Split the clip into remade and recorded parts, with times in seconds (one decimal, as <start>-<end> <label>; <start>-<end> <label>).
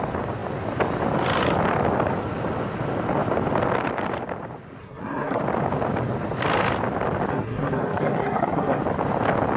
0.0-4.8 recorded; 4.8-5.4 remade; 5.4-7.3 recorded; 7.3-8.8 remade; 8.8-9.6 recorded